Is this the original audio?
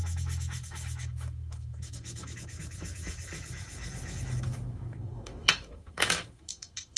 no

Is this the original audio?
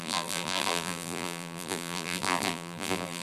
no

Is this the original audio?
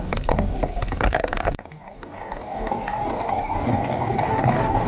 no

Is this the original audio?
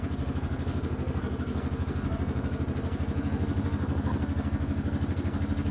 no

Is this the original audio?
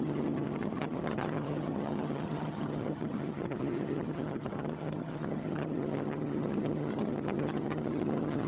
no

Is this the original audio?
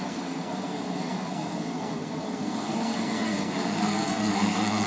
no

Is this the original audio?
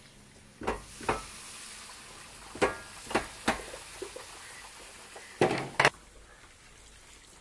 yes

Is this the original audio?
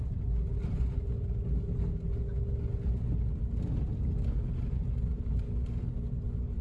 yes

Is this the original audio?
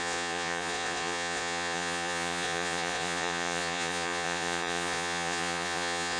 no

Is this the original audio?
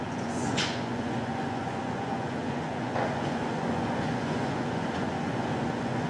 no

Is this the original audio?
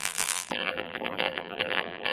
no